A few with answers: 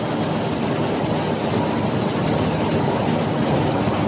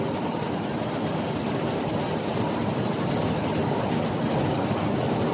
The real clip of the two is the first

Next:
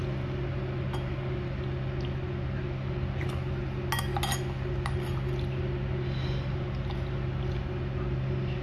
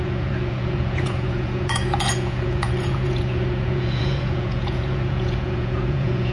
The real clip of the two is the first